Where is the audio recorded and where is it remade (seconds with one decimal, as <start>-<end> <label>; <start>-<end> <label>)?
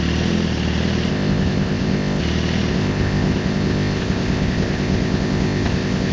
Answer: 0.0-1.1 recorded; 1.1-2.2 remade; 2.2-2.7 recorded; 2.7-6.1 remade